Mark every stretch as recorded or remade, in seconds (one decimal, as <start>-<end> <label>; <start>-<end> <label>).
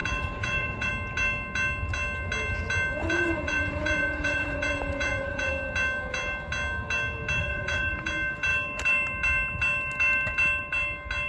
0.0-0.9 remade; 0.9-3.0 recorded; 3.0-5.5 remade; 5.5-7.4 recorded; 7.4-8.1 remade; 8.1-11.3 recorded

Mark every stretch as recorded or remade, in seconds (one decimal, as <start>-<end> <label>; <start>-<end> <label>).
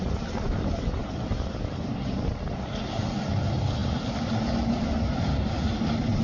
0.0-6.2 recorded